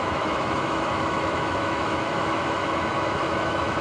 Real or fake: fake